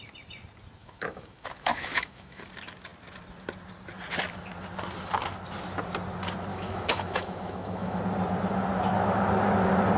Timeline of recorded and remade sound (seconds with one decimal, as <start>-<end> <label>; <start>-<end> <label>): 0.0-0.8 recorded; 0.8-2.4 remade; 2.4-6.5 recorded; 6.5-8.0 remade; 8.0-10.0 recorded